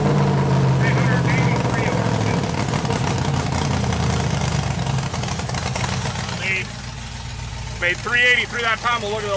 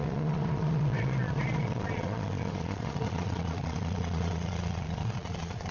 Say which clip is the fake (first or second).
second